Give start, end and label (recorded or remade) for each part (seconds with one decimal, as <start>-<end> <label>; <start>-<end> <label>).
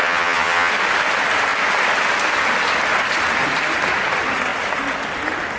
0.0-0.7 remade; 0.7-5.6 recorded